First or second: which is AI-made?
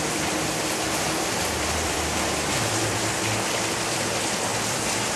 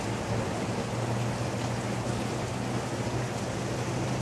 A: first